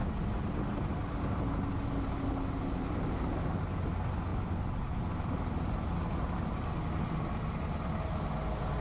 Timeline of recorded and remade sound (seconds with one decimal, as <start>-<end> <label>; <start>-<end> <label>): 0.0-8.8 recorded